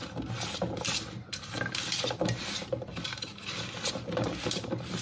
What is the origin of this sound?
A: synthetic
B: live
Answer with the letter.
B